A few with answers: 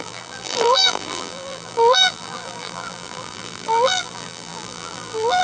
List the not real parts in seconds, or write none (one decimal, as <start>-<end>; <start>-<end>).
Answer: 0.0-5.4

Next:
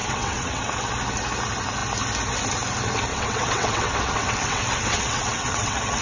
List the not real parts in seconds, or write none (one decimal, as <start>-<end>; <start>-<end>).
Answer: 0.0-0.9; 3.1-6.0

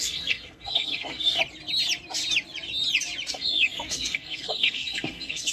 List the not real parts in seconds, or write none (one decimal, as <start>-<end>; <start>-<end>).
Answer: 0.0-1.4; 3.3-5.5

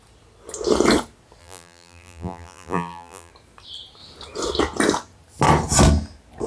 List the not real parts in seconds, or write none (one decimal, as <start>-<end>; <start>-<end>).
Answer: 1.4-3.3

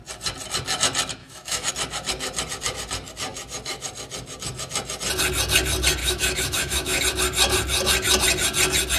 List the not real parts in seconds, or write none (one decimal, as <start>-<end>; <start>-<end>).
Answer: 1.2-1.7; 6.0-7.0

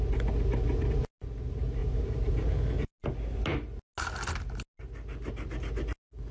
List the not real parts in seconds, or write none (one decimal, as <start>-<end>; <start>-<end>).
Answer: none

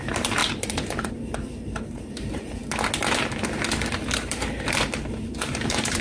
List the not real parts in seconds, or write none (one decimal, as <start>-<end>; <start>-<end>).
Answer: 0.0-2.6; 3.8-6.0